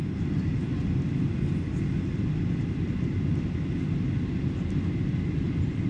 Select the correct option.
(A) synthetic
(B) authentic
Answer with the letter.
B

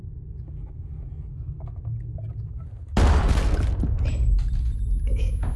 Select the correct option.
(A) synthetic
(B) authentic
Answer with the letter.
B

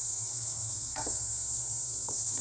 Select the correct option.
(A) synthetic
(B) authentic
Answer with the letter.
A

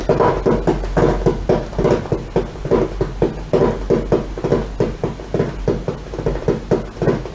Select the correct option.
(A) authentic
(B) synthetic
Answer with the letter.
A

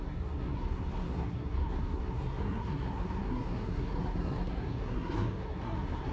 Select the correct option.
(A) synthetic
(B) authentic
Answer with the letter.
A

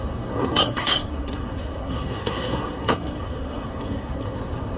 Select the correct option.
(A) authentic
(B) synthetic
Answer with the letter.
B